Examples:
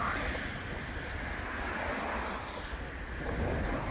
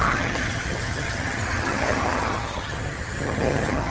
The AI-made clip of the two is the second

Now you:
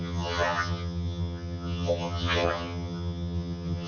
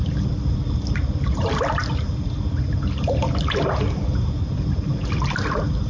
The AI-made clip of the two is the first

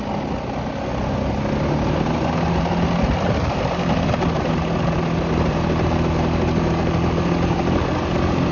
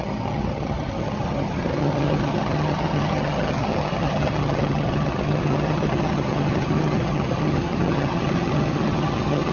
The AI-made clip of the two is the second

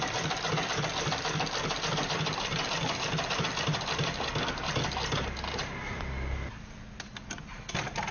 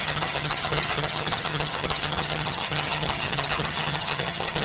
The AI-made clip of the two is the second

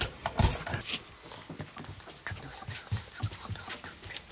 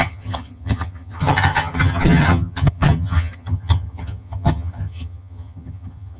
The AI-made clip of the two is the second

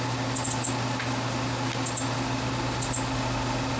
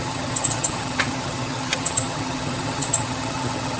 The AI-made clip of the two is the second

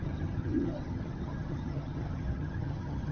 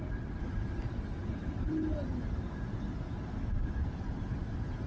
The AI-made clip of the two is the first